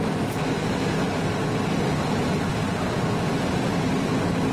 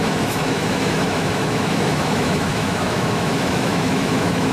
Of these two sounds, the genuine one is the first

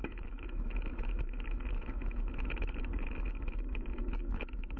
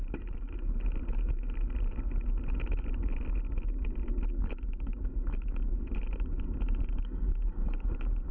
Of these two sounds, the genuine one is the second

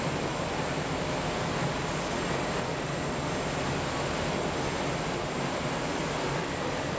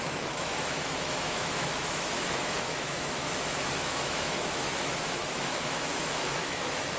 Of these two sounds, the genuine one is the first